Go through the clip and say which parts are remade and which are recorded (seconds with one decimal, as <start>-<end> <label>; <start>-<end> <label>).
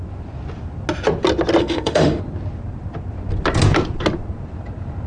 0.0-1.6 recorded; 1.6-2.2 remade; 2.2-5.1 recorded